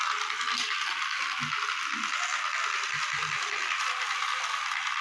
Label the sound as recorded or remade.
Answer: recorded